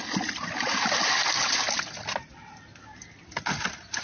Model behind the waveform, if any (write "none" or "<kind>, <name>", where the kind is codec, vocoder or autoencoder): none